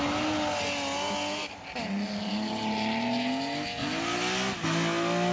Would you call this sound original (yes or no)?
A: yes